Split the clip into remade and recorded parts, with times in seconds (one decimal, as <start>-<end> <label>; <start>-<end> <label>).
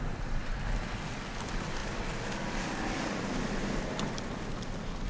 0.0-0.4 remade; 0.4-1.4 recorded; 1.4-1.8 remade; 1.8-5.1 recorded